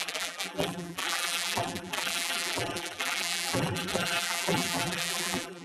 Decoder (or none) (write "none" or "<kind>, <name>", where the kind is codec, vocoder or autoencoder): vocoder, BigVGAN v2